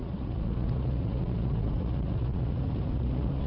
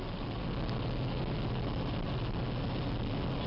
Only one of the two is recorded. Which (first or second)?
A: second